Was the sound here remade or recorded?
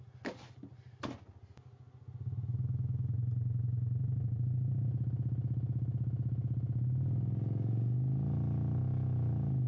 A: recorded